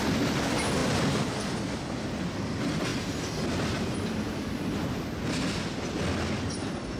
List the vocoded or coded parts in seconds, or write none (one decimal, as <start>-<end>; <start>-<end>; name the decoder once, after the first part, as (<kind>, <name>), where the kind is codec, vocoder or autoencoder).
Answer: none